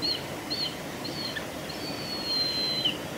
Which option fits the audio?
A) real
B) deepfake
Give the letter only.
A